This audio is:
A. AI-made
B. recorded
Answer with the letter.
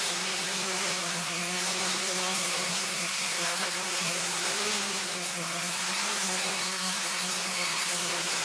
A